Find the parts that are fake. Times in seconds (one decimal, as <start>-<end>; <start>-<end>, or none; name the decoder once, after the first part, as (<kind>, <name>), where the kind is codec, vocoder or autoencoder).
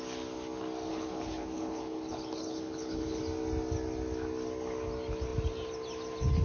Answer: 0.9-3.2 (codec, HILCodec)